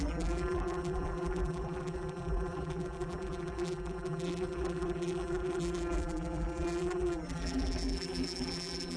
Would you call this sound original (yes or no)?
no